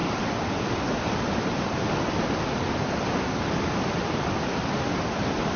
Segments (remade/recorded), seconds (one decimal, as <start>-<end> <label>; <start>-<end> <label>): 0.0-5.6 recorded